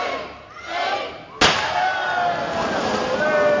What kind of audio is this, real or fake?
real